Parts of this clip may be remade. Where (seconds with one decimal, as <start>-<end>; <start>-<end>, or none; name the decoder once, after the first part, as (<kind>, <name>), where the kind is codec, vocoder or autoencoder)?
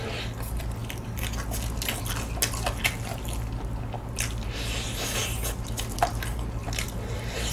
none